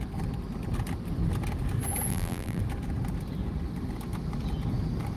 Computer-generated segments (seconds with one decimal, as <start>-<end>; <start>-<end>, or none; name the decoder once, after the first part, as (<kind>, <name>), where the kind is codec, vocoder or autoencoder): 2.1-2.6 (vocoder, BigVGAN v2)